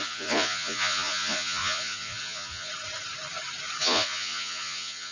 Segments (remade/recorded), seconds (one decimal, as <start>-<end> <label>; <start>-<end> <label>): 0.0-2.7 remade; 2.7-3.8 recorded; 3.8-5.1 remade